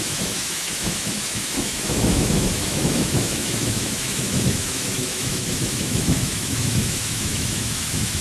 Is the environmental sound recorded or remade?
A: remade